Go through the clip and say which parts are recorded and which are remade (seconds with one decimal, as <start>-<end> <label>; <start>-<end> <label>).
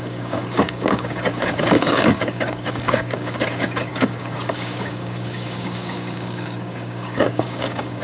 0.0-8.0 remade